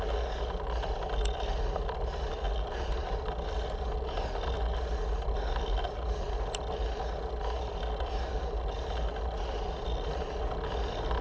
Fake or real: real